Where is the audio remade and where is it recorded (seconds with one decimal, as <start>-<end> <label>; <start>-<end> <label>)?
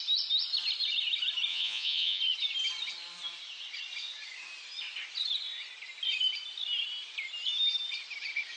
0.0-1.5 recorded; 1.5-2.2 remade; 2.2-8.6 recorded